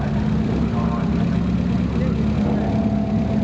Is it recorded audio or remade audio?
recorded